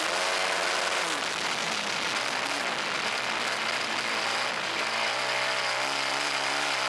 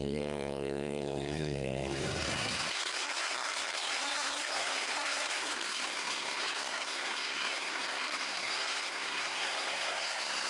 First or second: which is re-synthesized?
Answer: second